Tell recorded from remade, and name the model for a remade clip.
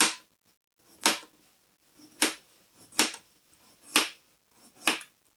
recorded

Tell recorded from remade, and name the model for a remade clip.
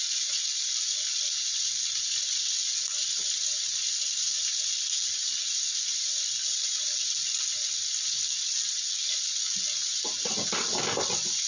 recorded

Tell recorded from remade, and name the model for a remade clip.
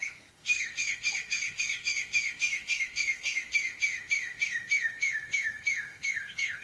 remade, autoencoder, DAC-VAE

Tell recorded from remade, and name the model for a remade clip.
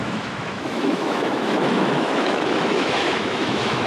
remade, autoencoder, DAC-VAE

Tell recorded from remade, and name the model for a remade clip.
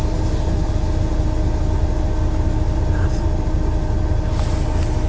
recorded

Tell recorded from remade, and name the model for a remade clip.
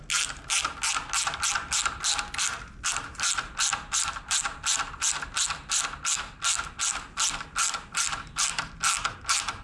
recorded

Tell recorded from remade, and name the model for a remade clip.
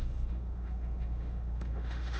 remade, autoencoder, DAC-VAE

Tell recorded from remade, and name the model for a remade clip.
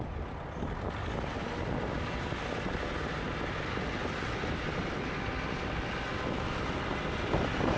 recorded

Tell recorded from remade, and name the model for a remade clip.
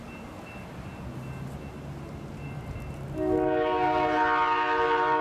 recorded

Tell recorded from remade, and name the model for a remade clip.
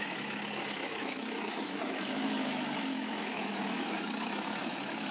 remade, autoencoder, DAC-VAE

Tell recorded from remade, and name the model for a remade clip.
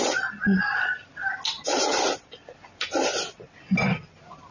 recorded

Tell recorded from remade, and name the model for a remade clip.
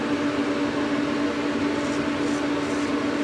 recorded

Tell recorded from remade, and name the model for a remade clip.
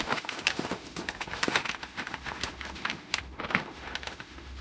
remade, autoencoder, DAC-VAE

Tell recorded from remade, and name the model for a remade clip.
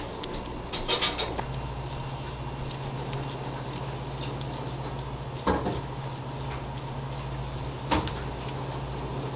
recorded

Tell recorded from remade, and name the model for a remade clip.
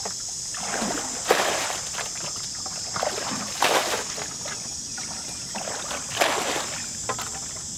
recorded